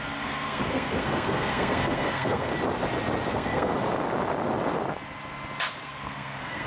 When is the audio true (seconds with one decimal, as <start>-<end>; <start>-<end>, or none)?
2.5-3.3; 3.7-5.7